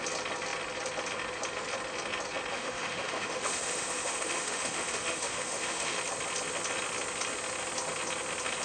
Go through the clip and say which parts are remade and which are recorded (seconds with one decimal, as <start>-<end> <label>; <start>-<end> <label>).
0.0-2.5 recorded; 2.5-6.0 remade; 6.0-8.6 recorded